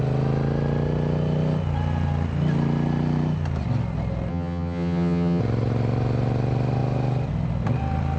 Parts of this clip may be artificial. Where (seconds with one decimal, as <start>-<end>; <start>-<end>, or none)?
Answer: 4.3-5.4